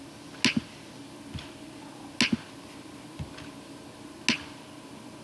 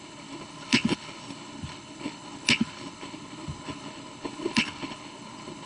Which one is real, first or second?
first